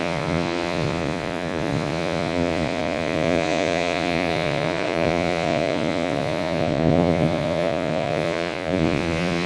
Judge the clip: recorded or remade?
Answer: remade